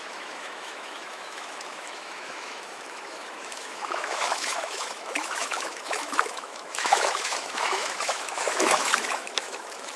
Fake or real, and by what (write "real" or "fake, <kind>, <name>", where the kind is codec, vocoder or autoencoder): fake, autoencoder, DAC-VAE